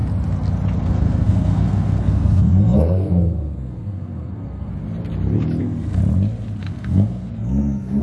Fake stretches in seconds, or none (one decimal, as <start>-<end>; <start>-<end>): 0.8-4.7; 5.6-6.0; 6.6-8.0